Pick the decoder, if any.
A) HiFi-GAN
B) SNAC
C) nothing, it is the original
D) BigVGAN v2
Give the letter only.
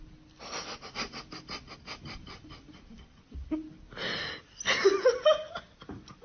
C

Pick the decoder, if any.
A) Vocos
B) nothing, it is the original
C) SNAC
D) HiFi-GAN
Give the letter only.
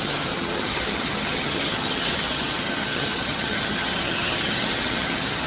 D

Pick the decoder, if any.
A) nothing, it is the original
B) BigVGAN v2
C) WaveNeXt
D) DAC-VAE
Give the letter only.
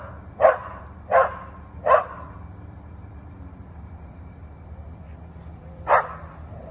B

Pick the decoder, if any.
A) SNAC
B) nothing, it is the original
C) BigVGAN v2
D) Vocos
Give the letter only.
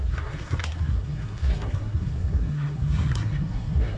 A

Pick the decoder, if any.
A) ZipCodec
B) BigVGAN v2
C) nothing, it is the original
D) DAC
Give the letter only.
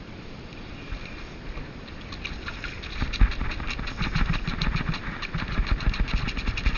C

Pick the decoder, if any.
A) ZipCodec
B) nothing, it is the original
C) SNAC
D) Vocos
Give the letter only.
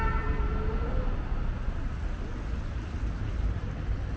B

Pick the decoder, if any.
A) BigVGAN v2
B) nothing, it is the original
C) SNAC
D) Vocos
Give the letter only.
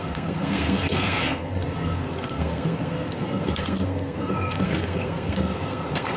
C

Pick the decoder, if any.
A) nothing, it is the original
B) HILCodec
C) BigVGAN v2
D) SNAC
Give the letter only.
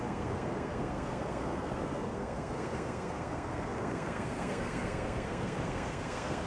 D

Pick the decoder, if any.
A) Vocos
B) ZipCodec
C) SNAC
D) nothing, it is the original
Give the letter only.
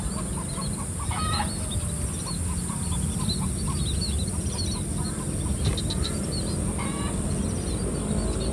D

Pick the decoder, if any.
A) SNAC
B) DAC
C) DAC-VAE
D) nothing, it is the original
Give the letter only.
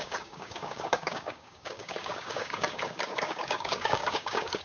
B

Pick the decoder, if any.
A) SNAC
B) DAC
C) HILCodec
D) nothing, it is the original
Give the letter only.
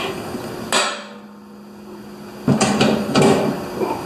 D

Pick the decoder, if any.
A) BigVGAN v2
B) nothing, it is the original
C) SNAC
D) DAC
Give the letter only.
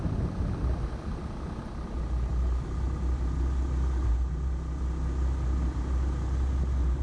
B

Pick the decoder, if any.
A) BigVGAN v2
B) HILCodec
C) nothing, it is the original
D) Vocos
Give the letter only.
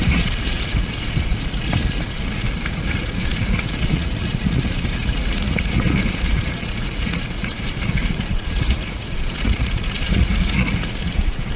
D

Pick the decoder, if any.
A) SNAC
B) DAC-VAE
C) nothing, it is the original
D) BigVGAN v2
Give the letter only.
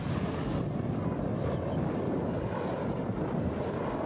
C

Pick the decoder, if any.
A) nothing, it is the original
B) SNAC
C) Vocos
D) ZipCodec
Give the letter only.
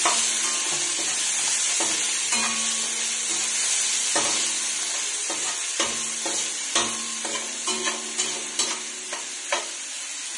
A